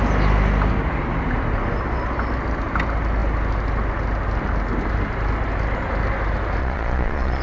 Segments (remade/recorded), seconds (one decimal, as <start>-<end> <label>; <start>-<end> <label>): 0.0-6.6 recorded; 6.6-7.4 remade

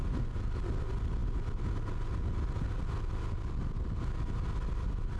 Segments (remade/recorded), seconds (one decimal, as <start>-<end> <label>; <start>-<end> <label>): 0.0-5.2 recorded

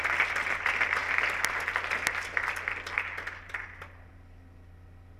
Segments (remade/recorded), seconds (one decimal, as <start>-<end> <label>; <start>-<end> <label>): 0.0-5.2 recorded

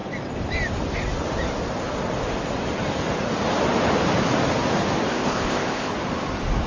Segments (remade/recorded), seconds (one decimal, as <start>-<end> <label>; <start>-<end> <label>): 0.0-5.1 recorded; 5.1-5.9 remade; 5.9-6.7 recorded